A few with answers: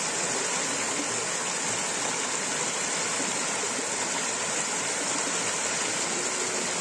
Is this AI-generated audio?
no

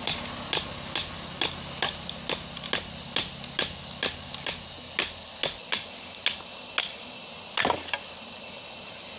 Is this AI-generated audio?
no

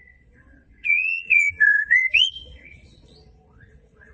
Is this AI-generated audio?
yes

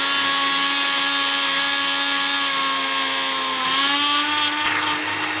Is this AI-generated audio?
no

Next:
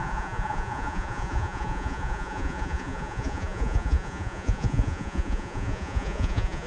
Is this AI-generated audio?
yes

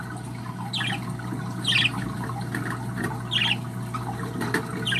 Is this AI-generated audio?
no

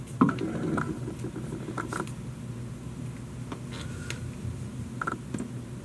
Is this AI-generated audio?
no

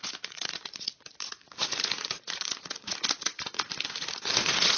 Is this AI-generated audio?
yes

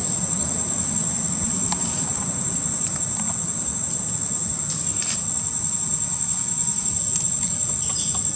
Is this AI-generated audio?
no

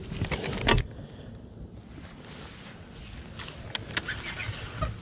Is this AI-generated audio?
no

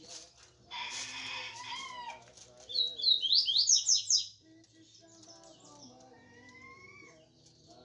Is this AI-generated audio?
no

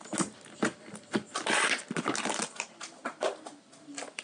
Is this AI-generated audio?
no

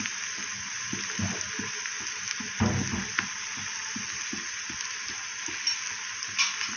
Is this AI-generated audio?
no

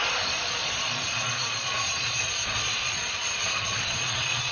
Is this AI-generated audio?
yes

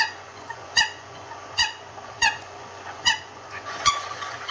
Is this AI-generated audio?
yes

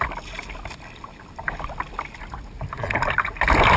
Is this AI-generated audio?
no